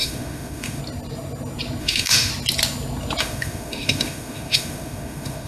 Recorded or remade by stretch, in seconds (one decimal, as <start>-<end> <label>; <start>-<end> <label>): 0.0-0.8 remade; 0.8-1.8 recorded; 1.8-2.3 remade; 2.3-3.2 recorded; 3.2-5.5 remade